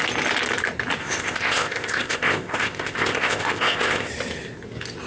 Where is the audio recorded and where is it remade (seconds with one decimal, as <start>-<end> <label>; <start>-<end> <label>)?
0.0-1.0 recorded; 1.0-4.1 remade; 4.1-5.1 recorded